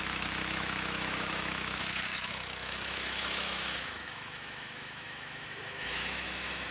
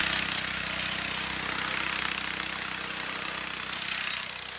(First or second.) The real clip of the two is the second